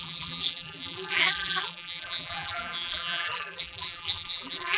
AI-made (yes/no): yes